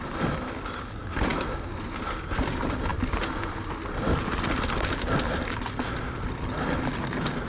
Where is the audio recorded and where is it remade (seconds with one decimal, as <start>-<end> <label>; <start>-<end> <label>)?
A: 0.0-7.5 recorded